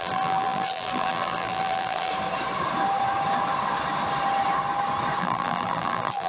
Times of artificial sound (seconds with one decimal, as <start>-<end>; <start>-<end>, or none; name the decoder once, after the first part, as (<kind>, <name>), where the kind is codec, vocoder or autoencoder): 0.0-2.1 (vocoder, BigVGAN v2); 5.2-6.3